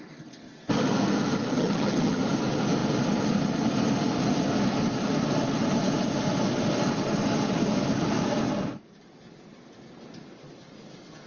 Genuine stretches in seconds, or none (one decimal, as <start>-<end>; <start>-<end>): 0.0-1.5; 2.2-11.3